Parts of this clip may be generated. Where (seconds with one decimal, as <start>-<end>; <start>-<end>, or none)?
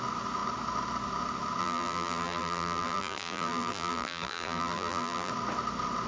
1.6-5.3